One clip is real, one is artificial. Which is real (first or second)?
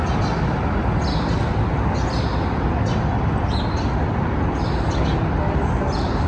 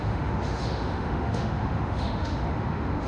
first